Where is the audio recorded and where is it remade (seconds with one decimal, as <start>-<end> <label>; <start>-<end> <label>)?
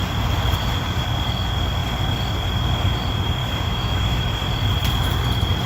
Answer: 0.0-3.4 recorded; 3.4-4.4 remade; 4.4-5.7 recorded